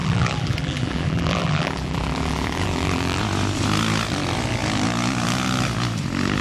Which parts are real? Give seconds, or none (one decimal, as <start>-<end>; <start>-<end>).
3.2-6.4